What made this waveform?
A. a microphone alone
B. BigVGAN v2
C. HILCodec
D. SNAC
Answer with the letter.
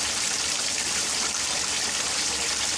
A